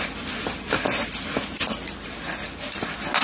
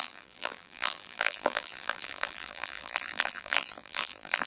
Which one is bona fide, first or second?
first